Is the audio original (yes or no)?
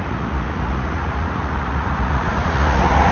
no